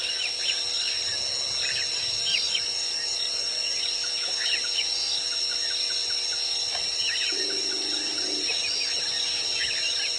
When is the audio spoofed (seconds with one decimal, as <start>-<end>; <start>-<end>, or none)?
0.0-1.1; 1.9-10.2